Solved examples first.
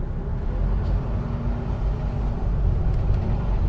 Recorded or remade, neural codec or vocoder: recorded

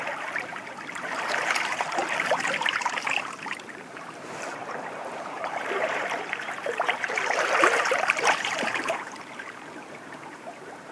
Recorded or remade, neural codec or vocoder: remade, vocoder, BigVGAN v2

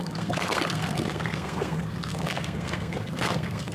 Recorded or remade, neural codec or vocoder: remade, codec, SNAC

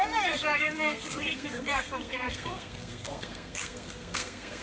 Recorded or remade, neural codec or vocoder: remade, codec, SNAC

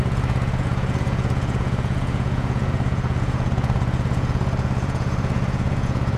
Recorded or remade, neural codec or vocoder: remade, vocoder, Vocos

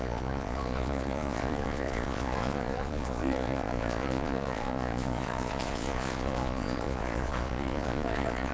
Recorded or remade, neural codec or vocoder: remade, vocoder, Vocos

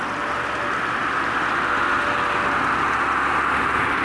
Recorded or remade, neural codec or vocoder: recorded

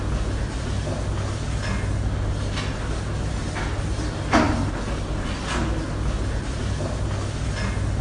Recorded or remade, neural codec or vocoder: recorded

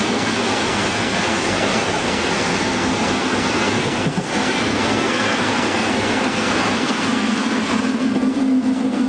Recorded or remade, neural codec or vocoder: remade, codec, SNAC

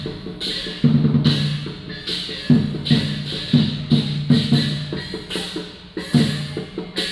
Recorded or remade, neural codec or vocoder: recorded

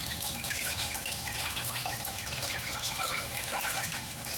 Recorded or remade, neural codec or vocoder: remade, autoencoder, DAC-VAE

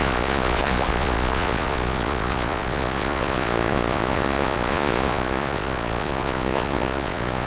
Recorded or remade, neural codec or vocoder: remade, vocoder, Vocos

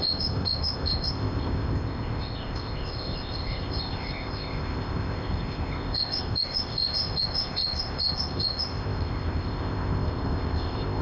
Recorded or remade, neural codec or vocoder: remade, codec, ZipCodec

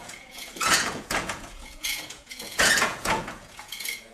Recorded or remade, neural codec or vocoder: remade, vocoder, Vocos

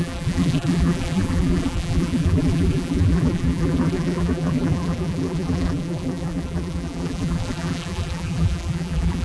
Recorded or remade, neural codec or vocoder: remade, vocoder, BigVGAN v2